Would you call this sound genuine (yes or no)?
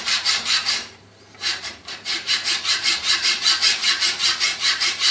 no